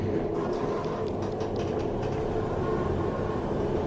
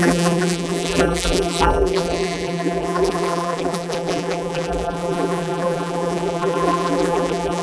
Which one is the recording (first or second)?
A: first